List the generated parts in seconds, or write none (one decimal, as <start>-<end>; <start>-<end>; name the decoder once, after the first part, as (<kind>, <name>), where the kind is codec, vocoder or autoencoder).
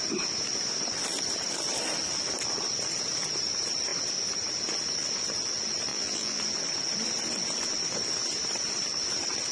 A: 5.9-6.4 (vocoder, BigVGAN v2)